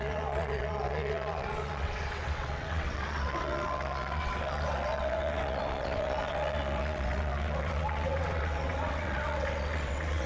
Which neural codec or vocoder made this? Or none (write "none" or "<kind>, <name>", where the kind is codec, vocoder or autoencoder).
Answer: vocoder, WaveNeXt